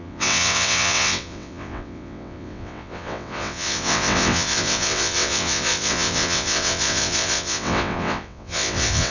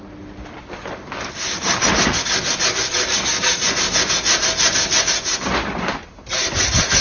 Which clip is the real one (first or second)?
second